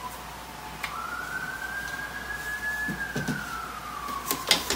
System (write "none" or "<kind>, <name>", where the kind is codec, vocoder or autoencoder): none